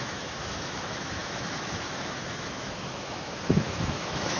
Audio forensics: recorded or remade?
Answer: remade